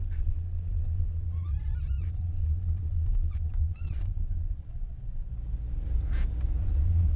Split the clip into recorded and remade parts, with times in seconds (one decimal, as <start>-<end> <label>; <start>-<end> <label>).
0.0-1.5 remade; 1.5-2.0 recorded; 2.0-5.3 remade; 5.3-6.6 recorded; 6.6-7.2 remade